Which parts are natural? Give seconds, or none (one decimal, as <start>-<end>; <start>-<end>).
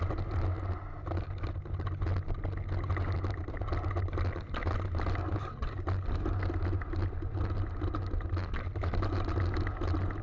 0.0-10.2